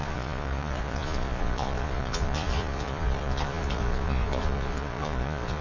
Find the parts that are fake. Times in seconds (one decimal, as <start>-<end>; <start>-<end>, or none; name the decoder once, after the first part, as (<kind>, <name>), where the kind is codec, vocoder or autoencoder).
0.0-5.6 (vocoder, Vocos)